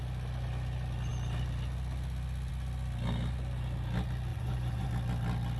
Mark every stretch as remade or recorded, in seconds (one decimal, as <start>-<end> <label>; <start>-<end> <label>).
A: 0.0-4.3 recorded; 4.3-4.9 remade; 4.9-5.6 recorded